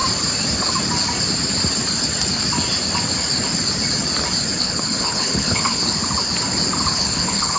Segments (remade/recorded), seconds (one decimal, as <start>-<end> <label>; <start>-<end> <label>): 0.0-4.6 recorded; 4.6-6.0 remade; 6.0-6.9 recorded; 6.9-7.6 remade